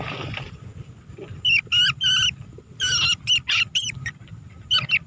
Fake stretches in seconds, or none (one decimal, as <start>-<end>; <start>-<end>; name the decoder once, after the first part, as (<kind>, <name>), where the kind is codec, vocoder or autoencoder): none